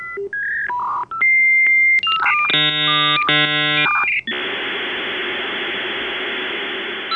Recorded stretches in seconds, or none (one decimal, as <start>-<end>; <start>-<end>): 0.0-7.2